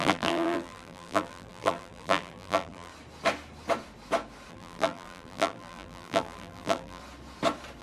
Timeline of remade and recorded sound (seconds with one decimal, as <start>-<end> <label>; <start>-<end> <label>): 0.0-2.9 remade; 2.9-4.5 recorded; 4.5-7.0 remade; 7.0-7.8 recorded